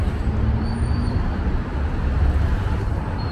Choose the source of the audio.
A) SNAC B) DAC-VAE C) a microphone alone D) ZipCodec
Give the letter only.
C